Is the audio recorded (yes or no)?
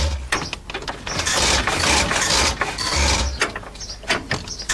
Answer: yes